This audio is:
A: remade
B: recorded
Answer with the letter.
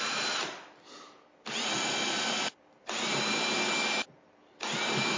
B